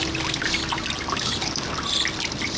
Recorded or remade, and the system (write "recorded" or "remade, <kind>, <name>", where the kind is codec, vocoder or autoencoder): recorded